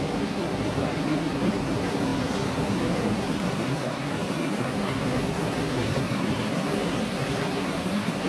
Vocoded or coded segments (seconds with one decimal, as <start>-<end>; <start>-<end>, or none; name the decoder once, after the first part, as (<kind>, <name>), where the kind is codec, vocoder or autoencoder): 0.0-8.3 (codec, SNAC)